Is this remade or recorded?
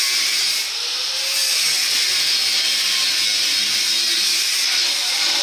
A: recorded